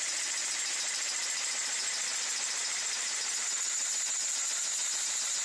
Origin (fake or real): fake